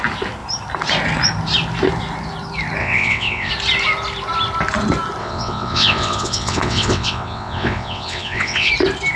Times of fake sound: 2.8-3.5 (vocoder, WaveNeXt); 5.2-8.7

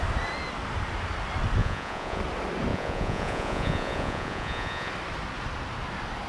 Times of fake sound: 1.6-2.2 (vocoder, Vocos); 2.7-4.9